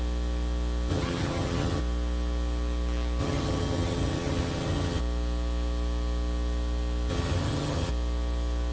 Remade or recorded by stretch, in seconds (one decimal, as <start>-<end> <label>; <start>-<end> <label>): 0.0-0.9 recorded; 0.9-1.8 remade; 1.8-3.2 recorded; 3.2-5.0 remade; 5.0-7.1 recorded; 7.1-7.9 remade; 7.9-8.7 recorded